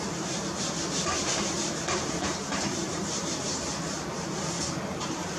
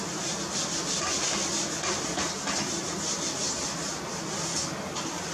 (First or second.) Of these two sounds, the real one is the second